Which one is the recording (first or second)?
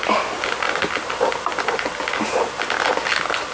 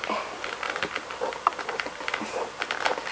first